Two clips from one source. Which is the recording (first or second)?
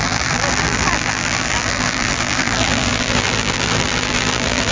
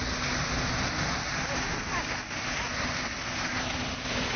second